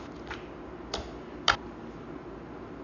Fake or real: real